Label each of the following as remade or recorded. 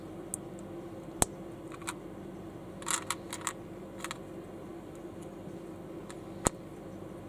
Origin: recorded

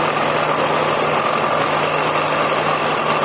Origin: recorded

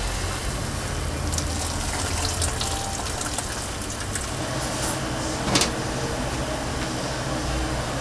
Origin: recorded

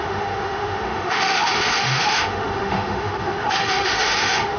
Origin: remade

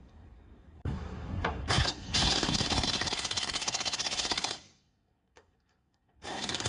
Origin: remade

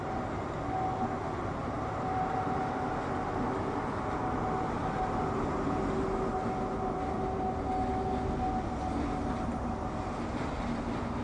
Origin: recorded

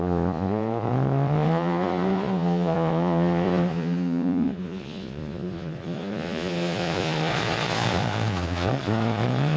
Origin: remade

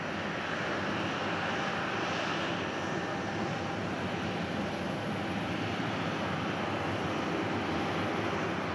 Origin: recorded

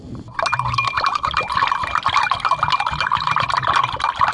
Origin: recorded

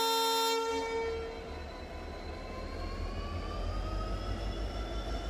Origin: recorded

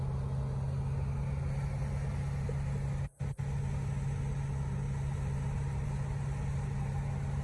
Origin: recorded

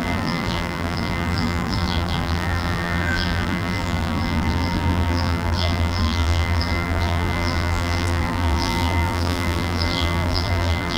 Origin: remade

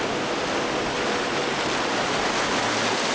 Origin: recorded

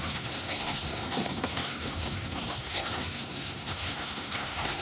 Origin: remade